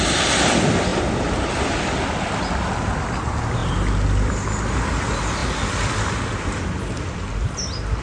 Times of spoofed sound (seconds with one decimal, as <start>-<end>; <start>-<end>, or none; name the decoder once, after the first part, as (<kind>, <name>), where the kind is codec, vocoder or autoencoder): none